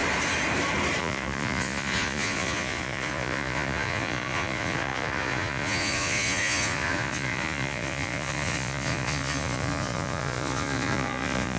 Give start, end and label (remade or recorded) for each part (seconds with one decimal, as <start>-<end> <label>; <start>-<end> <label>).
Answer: 0.0-1.0 recorded; 1.0-11.6 remade